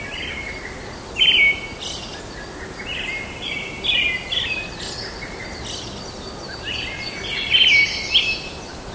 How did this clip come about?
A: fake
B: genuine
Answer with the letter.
B